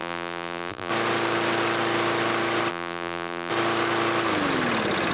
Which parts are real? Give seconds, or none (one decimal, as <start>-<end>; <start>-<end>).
0.9-2.7; 3.5-5.1